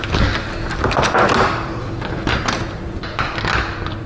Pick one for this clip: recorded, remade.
recorded